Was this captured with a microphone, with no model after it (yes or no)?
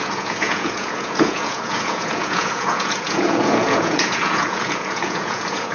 no